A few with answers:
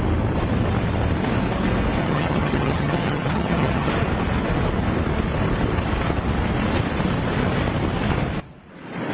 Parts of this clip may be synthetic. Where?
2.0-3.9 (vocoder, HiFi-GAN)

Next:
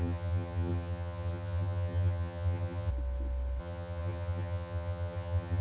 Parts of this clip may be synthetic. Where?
0.0-2.9 (vocoder, HiFi-GAN); 3.6-5.6